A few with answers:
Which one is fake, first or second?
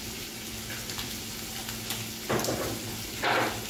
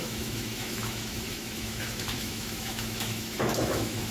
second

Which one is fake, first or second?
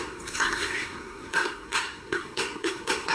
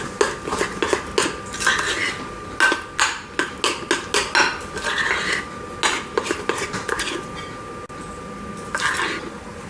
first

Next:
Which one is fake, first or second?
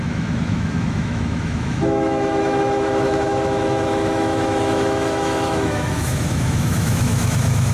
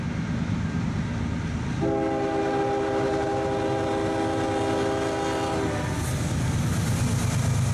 first